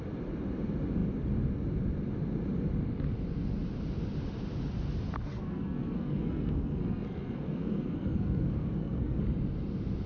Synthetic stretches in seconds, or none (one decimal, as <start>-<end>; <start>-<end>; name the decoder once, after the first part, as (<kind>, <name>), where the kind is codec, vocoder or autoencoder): 5.3-9.2 (codec, SNAC)